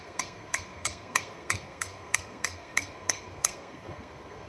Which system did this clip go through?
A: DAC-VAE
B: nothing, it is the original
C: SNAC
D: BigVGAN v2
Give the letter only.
C